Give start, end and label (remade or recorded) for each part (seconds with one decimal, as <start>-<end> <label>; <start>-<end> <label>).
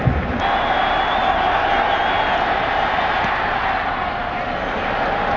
0.0-5.4 recorded